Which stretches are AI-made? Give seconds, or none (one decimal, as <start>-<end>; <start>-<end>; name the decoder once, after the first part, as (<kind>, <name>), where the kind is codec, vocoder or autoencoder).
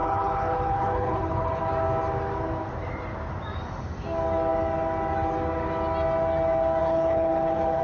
0.0-1.6 (codec, HILCodec); 6.8-7.8